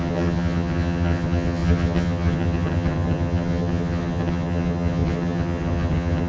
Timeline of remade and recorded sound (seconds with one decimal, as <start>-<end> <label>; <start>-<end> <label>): 0.0-6.3 remade